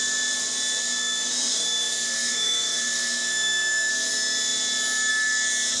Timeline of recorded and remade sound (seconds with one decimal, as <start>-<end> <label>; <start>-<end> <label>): 0.0-0.8 recorded; 0.8-3.9 remade; 3.9-5.8 recorded